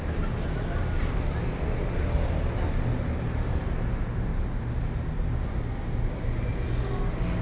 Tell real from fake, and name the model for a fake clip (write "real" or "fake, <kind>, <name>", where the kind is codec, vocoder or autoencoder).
real